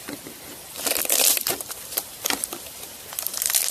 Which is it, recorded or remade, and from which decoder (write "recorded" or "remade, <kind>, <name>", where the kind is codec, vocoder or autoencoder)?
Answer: remade, vocoder, BigVGAN v2